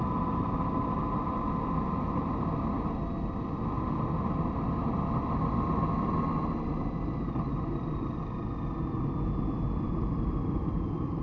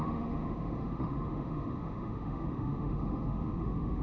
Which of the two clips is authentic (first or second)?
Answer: first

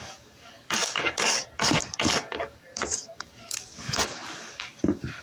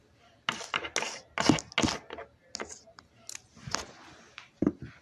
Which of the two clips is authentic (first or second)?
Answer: second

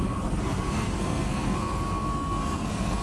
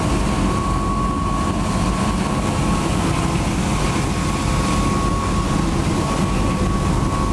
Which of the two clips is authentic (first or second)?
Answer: second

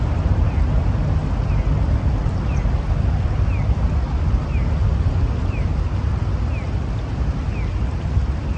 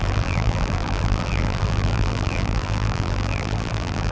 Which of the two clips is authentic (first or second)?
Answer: first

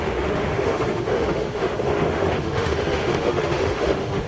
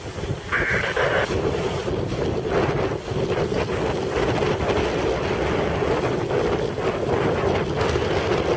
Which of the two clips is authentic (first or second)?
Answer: second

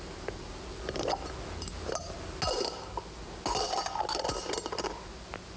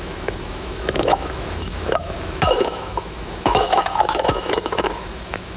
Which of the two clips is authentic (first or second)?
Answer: first